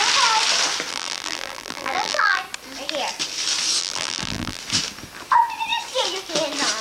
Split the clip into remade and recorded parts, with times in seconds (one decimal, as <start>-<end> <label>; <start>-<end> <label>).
0.0-0.9 recorded; 0.9-2.4 remade; 2.4-3.8 recorded; 3.8-4.6 remade; 4.6-6.8 recorded